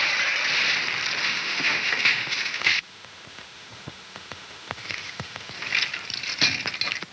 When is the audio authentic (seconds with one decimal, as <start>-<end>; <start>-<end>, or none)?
0.0-1.2; 5.5-7.1